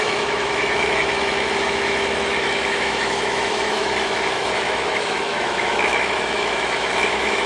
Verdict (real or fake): fake